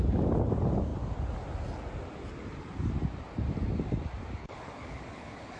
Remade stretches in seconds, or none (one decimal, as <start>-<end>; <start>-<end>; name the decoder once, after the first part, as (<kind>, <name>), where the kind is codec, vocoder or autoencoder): 4.4-5.6 (codec, HILCodec)